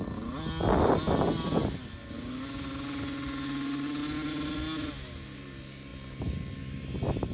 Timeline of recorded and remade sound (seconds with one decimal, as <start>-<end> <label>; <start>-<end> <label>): 0.0-7.3 recorded